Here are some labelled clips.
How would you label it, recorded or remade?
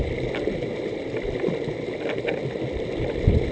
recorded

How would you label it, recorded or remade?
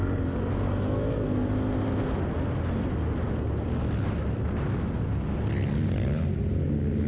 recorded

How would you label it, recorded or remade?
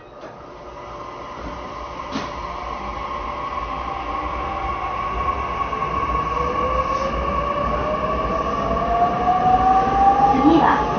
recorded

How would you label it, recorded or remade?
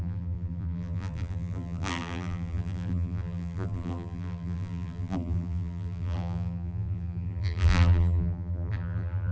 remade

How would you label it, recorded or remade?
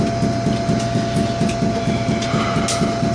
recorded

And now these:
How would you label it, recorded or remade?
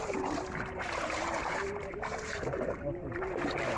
remade